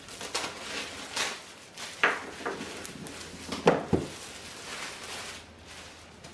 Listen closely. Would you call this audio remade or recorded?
recorded